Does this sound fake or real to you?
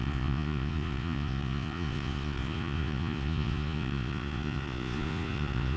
fake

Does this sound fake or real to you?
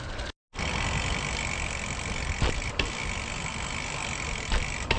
real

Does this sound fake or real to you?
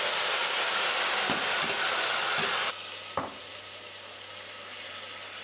real